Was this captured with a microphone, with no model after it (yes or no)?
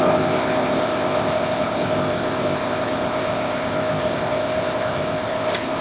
no